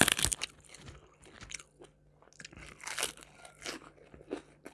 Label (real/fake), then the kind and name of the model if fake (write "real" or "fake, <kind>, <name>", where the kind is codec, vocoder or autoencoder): real